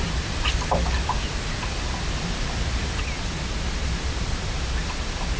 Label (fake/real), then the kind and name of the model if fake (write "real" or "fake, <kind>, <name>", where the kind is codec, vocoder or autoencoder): real